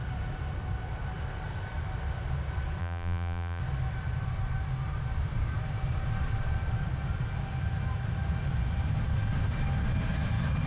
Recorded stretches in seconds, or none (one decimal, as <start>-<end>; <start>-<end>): 0.0-2.8; 3.6-10.7